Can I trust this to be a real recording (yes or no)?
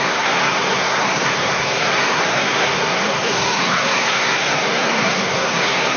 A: no